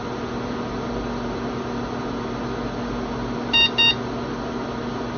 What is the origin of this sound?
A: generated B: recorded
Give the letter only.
B